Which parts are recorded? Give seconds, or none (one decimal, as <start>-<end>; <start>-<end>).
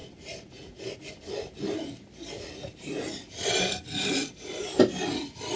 0.0-5.6